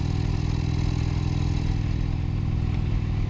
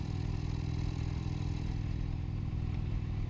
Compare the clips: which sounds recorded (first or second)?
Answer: first